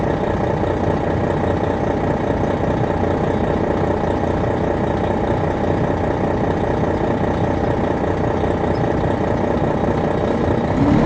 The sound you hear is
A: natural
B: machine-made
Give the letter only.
A